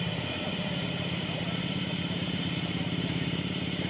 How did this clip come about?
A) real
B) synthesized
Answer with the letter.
B